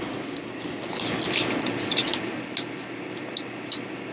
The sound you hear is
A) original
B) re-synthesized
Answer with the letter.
A